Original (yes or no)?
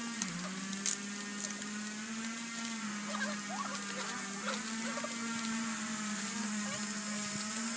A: yes